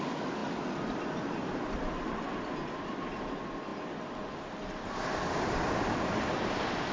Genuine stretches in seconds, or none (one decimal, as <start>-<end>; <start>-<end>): 0.0-6.9